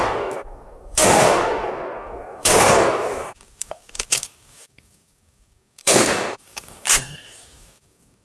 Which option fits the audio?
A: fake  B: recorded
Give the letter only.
A